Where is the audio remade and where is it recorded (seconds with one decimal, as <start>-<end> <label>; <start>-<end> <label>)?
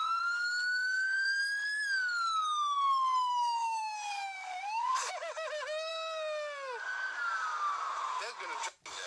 0.0-1.4 remade; 1.4-3.3 recorded; 3.3-5.1 remade; 5.1-9.1 recorded